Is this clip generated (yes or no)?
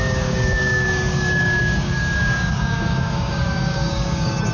yes